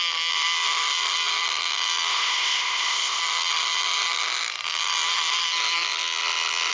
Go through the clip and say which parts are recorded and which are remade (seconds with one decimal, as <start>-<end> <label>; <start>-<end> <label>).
0.0-2.1 recorded; 2.1-3.2 remade; 3.2-6.7 recorded